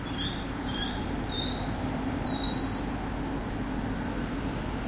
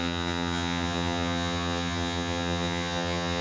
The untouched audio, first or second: first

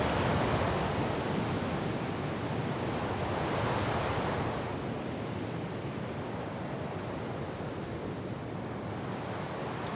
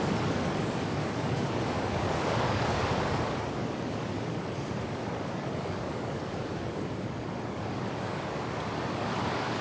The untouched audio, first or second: first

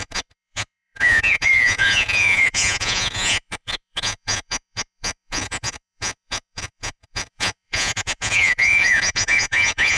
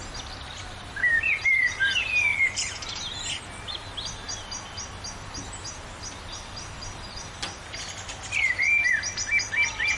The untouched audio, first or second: second